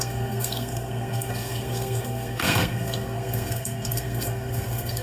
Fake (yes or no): yes